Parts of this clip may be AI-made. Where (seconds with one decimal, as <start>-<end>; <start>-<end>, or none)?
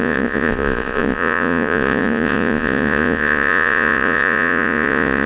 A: 0.0-5.3